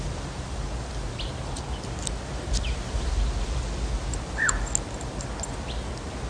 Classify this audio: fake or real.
real